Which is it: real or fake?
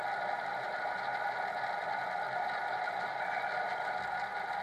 real